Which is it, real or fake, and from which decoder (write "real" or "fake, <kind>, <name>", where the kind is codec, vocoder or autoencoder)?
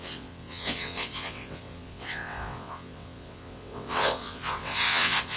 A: fake, vocoder, WaveNeXt